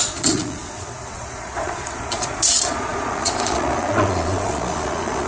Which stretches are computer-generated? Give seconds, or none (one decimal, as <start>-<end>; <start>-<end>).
0.0-5.3